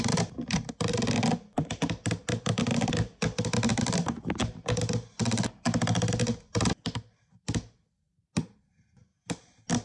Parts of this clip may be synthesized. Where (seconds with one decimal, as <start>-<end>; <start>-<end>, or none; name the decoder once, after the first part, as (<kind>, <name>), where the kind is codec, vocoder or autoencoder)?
none